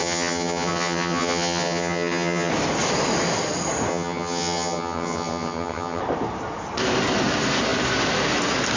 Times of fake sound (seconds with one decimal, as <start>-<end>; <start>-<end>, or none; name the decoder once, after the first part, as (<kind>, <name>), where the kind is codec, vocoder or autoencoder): 0.0-2.5 (vocoder, HiFi-GAN); 3.9-6.0